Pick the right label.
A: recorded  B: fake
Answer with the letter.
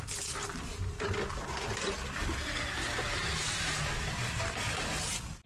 A